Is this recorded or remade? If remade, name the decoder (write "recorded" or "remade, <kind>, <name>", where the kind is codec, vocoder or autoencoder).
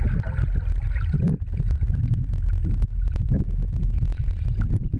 recorded